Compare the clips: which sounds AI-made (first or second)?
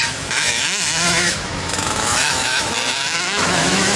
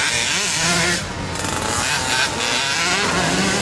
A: first